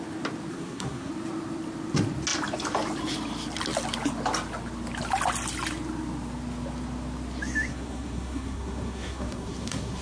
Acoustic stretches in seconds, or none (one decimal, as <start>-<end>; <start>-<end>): 0.0-0.5; 1.1-7.7